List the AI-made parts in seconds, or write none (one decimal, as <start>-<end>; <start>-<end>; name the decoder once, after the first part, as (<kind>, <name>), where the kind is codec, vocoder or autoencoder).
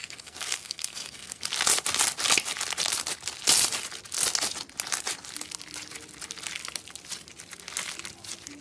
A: 0.0-1.4 (codec, SNAC)